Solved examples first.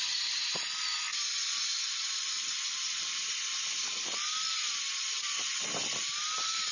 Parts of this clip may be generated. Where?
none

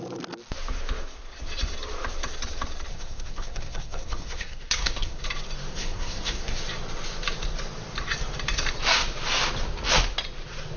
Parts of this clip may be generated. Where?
2.9-5.2 (codec, SNAC); 5.7-6.6

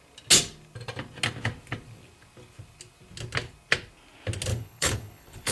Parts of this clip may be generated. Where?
4.5-5.5 (codec, HILCodec)